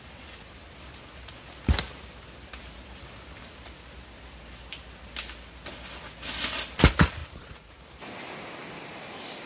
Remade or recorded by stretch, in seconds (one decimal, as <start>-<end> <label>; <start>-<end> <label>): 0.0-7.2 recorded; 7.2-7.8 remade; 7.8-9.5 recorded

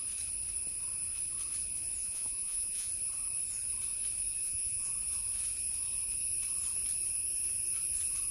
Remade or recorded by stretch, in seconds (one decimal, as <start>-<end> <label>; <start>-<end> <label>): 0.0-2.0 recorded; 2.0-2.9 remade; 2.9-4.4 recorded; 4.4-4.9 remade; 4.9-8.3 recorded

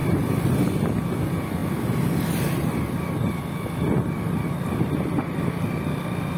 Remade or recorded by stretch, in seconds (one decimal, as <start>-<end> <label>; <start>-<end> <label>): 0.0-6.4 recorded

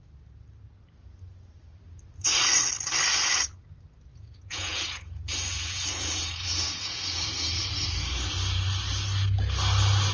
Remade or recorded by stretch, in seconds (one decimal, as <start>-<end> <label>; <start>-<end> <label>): 0.0-4.1 recorded; 4.1-7.2 remade; 7.2-10.1 recorded

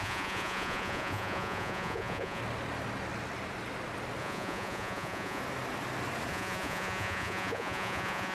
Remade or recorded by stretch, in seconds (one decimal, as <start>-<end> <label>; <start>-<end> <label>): 0.0-2.4 remade; 2.4-4.2 recorded; 4.2-5.4 remade; 5.4-6.3 recorded; 6.3-8.3 remade

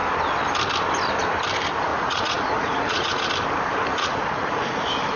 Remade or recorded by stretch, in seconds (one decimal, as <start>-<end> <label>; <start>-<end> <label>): 0.0-1.9 recorded; 1.9-3.3 remade; 3.3-3.9 recorded; 3.9-4.6 remade; 4.6-5.2 recorded